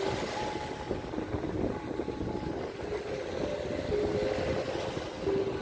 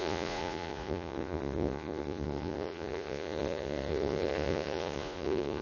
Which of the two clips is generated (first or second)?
second